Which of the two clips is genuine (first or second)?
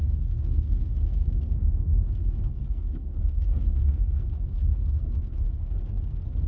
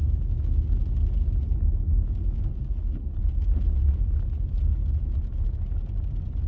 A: second